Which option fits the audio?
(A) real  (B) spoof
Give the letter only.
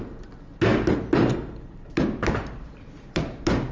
A